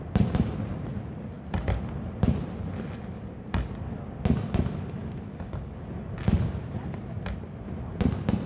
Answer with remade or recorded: recorded